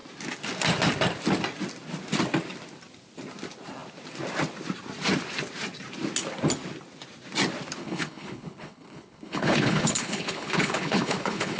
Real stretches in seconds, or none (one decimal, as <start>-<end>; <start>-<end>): 0.0-7.8